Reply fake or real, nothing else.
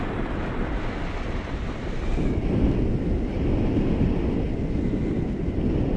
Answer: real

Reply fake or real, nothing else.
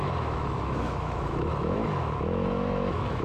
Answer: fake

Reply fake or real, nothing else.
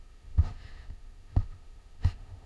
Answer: fake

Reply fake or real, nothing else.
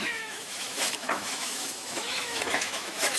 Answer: fake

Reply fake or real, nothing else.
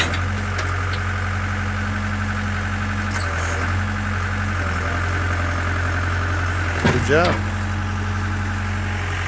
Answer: real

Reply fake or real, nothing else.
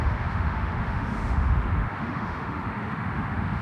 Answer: fake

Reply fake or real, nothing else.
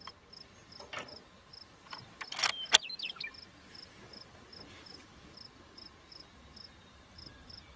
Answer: real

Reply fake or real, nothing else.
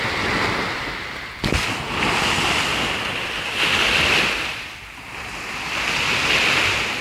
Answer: real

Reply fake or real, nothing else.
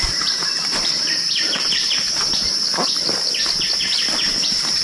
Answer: real